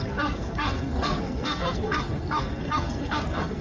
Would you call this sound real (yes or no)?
no